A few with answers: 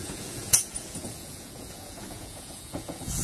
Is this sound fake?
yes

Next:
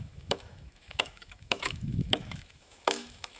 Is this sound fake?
yes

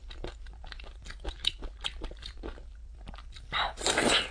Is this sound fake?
no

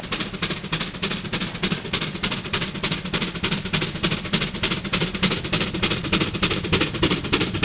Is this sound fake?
yes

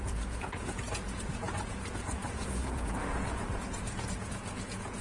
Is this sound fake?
yes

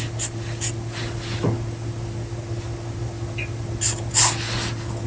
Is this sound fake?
no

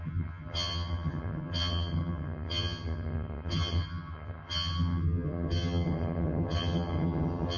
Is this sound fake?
yes